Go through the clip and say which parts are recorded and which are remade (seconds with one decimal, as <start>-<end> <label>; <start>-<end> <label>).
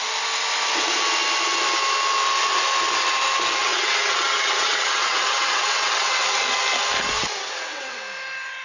0.0-3.6 recorded; 3.6-6.4 remade; 6.4-7.3 recorded; 7.3-8.0 remade; 8.0-8.6 recorded